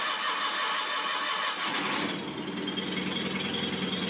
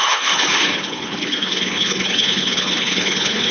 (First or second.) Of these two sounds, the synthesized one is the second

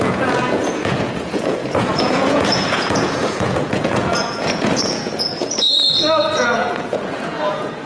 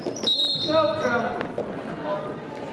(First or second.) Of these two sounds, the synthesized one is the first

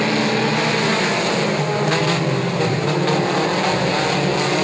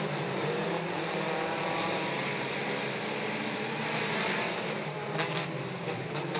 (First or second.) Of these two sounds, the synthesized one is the second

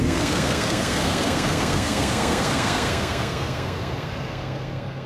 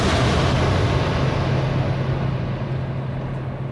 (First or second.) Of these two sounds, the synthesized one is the first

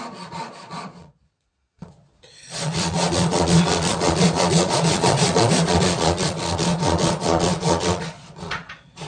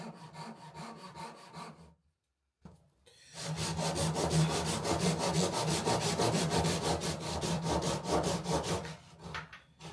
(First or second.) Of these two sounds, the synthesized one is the first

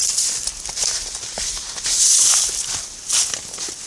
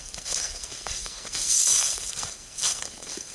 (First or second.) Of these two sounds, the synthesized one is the second